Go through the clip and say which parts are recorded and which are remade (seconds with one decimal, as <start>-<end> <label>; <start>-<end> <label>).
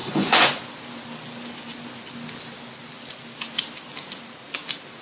0.0-0.6 remade; 0.6-5.0 recorded